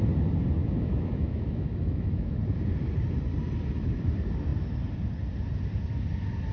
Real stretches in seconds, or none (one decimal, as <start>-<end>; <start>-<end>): 0.0-0.6; 2.4-6.5